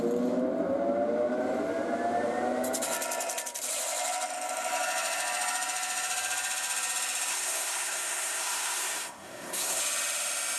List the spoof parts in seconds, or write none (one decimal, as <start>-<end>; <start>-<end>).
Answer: 7.3-9.8